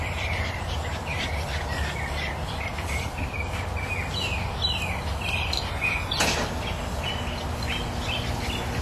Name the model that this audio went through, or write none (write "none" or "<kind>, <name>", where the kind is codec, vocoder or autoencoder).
none